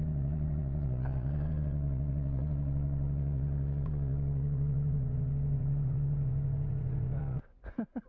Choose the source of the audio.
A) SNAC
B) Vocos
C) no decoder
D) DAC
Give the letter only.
B